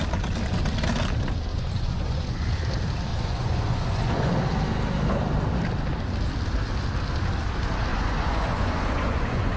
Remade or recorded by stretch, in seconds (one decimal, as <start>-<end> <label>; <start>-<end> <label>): 0.0-1.5 recorded; 1.5-2.5 remade; 2.5-3.1 recorded; 3.1-4.3 remade; 4.3-7.9 recorded; 7.9-9.6 remade